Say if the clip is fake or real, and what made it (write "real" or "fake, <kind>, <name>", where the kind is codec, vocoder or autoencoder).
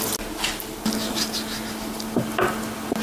real